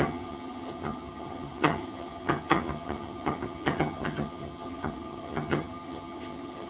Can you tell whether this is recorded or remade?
remade